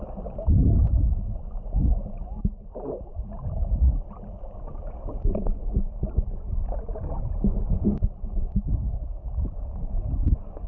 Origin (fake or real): real